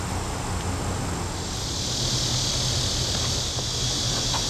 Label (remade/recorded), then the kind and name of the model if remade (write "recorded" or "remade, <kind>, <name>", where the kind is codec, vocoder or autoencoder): recorded